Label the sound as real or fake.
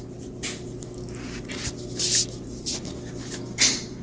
real